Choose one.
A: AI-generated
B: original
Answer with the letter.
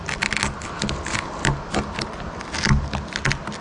B